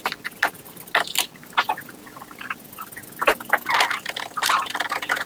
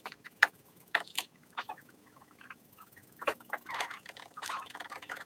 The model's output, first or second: second